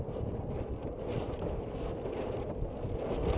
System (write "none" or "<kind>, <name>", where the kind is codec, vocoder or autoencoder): none